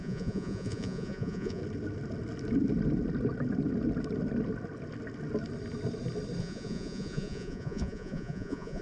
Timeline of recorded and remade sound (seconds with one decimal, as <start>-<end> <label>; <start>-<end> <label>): 0.0-1.6 remade; 1.6-6.4 recorded; 6.4-8.8 remade